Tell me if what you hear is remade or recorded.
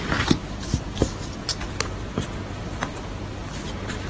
recorded